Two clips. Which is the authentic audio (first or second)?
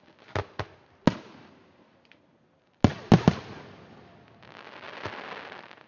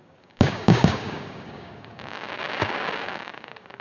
first